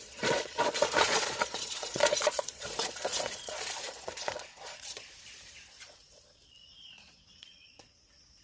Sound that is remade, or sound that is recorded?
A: remade